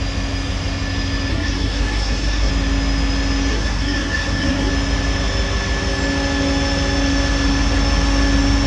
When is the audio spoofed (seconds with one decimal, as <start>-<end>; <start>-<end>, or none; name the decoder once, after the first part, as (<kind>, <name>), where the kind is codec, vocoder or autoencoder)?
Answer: 1.3-2.5 (codec, SNAC); 3.5-4.7